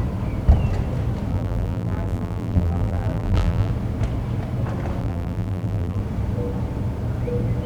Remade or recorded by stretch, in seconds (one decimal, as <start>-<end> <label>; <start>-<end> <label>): 0.0-1.3 recorded; 1.3-3.7 remade; 3.7-5.0 recorded; 5.0-6.0 remade; 6.0-7.7 recorded